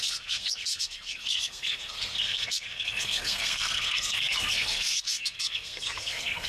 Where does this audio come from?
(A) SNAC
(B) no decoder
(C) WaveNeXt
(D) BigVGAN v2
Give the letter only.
A